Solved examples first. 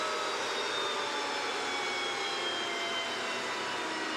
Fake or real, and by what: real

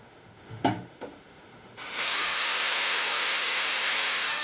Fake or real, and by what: fake, autoencoder, DAC-VAE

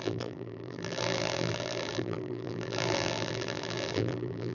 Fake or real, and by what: fake, vocoder, BigVGAN v2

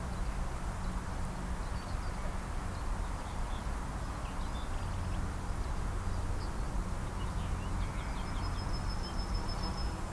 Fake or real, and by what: real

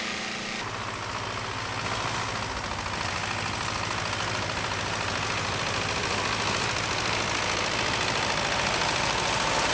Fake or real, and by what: real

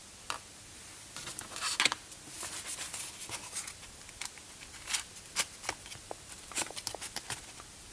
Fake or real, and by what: real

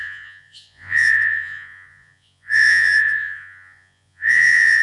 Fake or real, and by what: fake, vocoder, Vocos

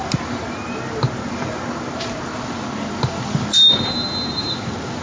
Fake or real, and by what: real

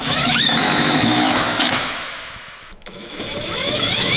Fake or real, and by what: fake, autoencoder, DAC-VAE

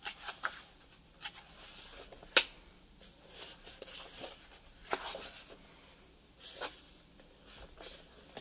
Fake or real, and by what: real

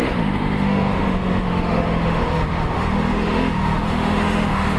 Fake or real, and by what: fake, autoencoder, DAC-VAE